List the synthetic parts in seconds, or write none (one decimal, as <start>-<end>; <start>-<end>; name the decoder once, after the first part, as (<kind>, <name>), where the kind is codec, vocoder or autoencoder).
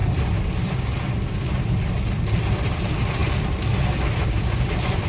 none